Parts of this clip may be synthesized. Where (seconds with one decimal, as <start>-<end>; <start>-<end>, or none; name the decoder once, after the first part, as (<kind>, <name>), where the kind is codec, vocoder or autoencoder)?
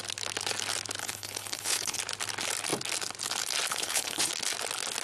1.0-2.0 (codec, HILCodec); 3.7-4.3